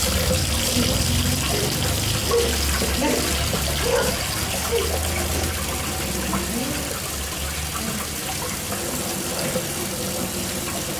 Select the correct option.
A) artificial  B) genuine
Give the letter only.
B